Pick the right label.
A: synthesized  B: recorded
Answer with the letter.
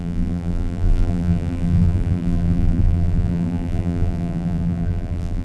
A